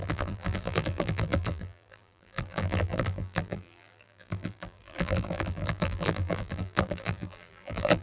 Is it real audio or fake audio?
fake